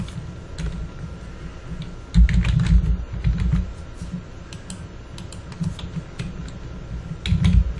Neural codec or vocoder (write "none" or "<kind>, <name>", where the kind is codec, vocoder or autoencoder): none